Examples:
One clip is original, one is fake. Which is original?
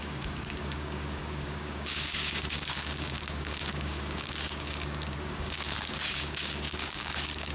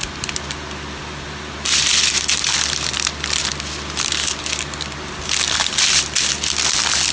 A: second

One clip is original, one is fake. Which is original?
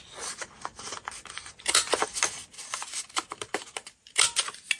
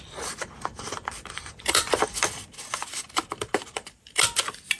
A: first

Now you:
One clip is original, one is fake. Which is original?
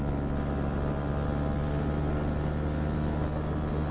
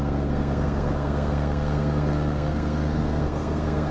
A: first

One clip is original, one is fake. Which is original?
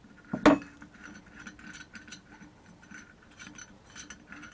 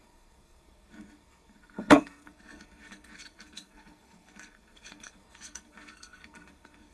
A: first